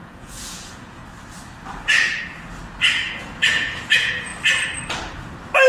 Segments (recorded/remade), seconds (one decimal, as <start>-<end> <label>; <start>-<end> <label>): 0.0-1.0 remade; 1.0-3.1 recorded; 3.1-4.3 remade; 4.3-5.7 recorded